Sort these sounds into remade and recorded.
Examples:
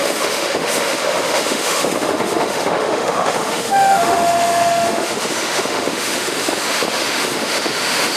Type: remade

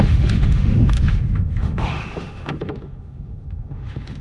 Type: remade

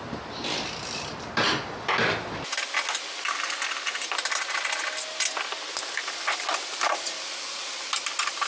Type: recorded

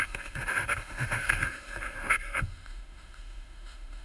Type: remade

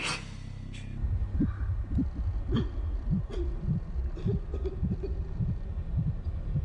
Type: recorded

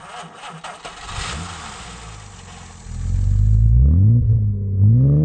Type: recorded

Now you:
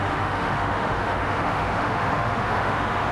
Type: remade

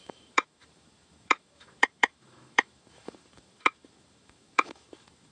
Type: remade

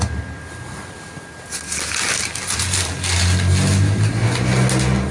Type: recorded